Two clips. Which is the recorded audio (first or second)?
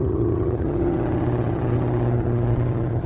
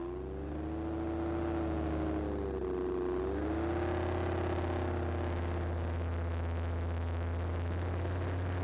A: second